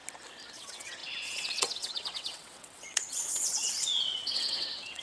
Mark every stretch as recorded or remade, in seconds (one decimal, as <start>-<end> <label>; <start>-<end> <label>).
0.0-0.5 recorded; 0.5-5.0 remade